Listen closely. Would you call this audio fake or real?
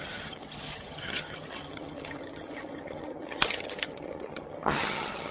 fake